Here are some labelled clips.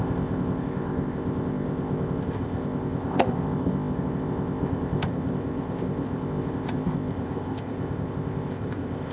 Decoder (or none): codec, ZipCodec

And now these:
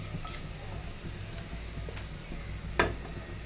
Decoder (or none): none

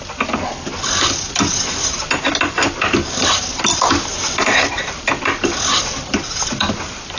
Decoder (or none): none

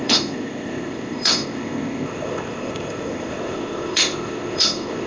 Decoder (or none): codec, ZipCodec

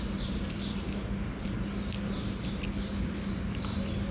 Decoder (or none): none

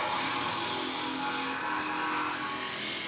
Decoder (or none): none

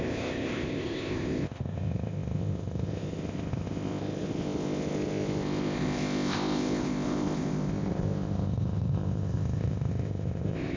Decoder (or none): codec, ZipCodec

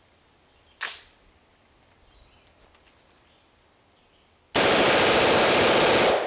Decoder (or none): none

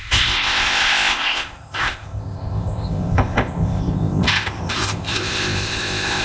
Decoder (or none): codec, ZipCodec